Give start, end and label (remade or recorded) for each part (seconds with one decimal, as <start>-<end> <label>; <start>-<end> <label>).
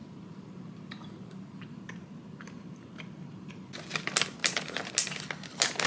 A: 0.0-3.5 remade; 3.5-4.4 recorded; 4.4-4.9 remade; 4.9-5.9 recorded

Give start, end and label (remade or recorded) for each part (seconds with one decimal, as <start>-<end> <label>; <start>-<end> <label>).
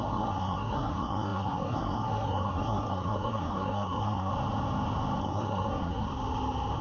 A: 0.0-4.3 remade; 4.3-5.2 recorded; 5.2-6.1 remade; 6.1-6.8 recorded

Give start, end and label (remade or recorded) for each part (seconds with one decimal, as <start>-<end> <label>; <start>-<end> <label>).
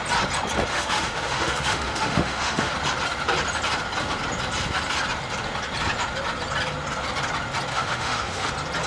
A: 0.0-0.7 recorded; 0.7-2.7 remade; 2.7-7.7 recorded; 7.7-8.5 remade; 8.5-8.9 recorded